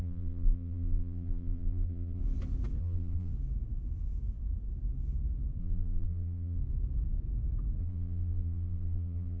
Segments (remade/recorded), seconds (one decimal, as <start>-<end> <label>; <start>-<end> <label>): 0.0-2.2 remade; 2.2-2.8 recorded; 2.8-3.3 remade; 3.3-5.6 recorded; 5.6-6.6 remade; 6.6-7.8 recorded; 7.8-9.4 remade